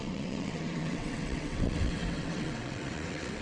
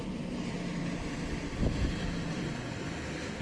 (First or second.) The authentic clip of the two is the second